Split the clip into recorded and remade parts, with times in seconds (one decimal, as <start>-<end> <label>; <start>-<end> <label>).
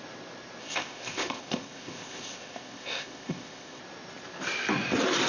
0.0-0.6 recorded; 0.6-3.8 remade; 3.8-5.3 recorded